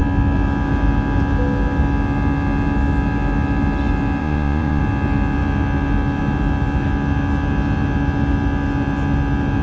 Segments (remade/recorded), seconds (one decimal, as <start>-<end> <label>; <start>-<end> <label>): 0.0-4.2 recorded; 4.2-4.8 remade; 4.8-9.6 recorded